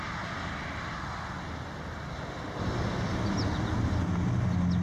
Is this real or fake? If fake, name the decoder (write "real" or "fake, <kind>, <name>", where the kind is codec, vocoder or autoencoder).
real